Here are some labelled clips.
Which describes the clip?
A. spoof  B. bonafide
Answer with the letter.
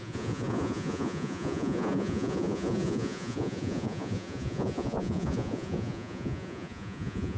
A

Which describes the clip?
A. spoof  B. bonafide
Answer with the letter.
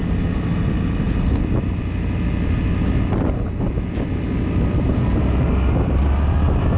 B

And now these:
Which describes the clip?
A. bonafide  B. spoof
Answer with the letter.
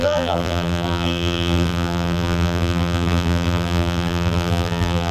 B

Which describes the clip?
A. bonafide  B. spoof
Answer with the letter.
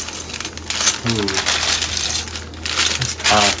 A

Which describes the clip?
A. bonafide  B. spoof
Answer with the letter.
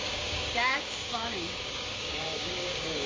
B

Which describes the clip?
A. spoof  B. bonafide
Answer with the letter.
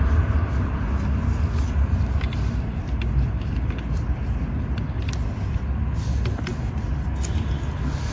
B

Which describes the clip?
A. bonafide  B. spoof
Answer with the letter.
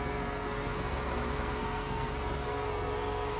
B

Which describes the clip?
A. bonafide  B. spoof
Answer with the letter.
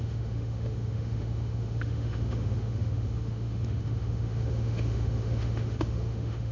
B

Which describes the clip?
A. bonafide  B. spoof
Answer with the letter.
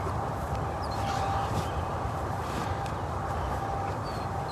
B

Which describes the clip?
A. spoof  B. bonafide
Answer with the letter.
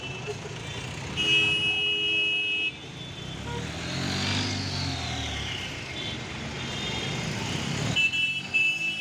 B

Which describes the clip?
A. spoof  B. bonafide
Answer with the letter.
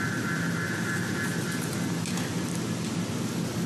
B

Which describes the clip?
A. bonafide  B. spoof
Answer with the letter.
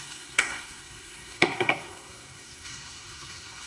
B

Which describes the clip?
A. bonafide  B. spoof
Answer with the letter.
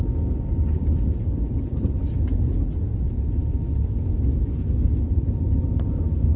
A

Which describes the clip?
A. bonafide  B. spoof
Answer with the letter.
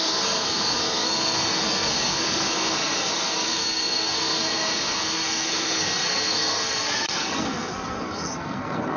B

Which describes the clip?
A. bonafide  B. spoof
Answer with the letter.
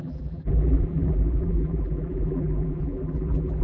B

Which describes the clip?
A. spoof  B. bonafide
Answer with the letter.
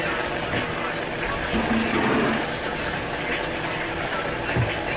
B